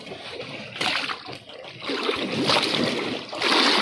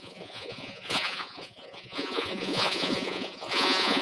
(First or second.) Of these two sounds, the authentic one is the first